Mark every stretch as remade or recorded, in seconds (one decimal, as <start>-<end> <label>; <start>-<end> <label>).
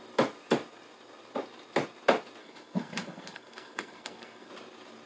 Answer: 0.0-2.4 recorded; 2.4-4.5 remade; 4.5-5.1 recorded